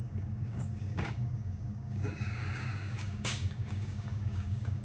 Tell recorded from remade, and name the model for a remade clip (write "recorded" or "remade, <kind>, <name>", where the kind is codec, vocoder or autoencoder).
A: remade, codec, DAC